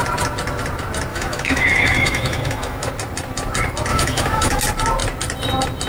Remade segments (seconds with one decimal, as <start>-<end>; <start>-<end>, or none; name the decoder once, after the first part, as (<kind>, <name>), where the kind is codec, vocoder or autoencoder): 1.1-2.9 (autoencoder, DAC-VAE); 3.9-4.6